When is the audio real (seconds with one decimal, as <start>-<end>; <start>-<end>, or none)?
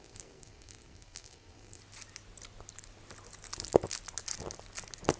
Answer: 1.8-5.2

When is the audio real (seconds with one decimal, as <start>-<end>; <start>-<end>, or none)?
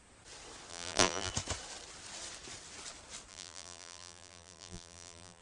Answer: 0.0-0.7; 1.3-3.3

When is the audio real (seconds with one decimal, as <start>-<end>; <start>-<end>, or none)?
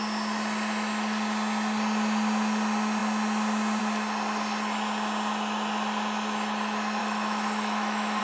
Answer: 0.0-7.0